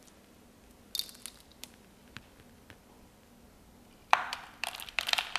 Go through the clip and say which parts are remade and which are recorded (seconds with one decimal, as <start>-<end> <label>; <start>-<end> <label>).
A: 0.0-1.5 recorded; 1.5-4.7 remade; 4.7-5.4 recorded